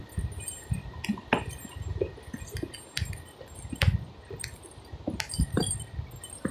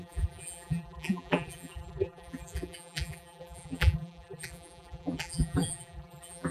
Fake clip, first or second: second